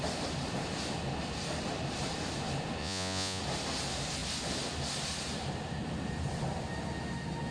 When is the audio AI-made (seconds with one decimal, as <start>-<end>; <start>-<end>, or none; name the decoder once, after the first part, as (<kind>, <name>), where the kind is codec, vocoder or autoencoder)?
2.8-3.4 (vocoder, Vocos)